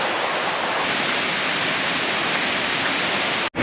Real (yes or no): yes